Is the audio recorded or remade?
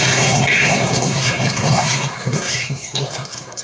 remade